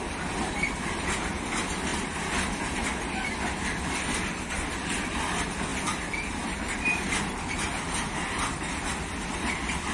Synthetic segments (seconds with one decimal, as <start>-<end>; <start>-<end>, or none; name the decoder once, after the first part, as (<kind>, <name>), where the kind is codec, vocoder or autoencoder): 5.7-6.6 (vocoder, BigVGAN v2)